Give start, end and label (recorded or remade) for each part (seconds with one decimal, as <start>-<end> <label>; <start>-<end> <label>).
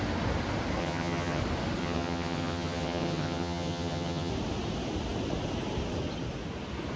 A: 0.0-0.8 recorded; 0.8-1.4 remade; 1.4-1.8 recorded; 1.8-4.3 remade; 4.3-7.0 recorded